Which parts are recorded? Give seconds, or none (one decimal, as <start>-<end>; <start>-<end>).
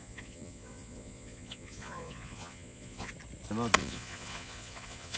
3.1-3.8